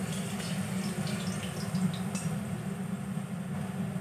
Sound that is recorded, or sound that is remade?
recorded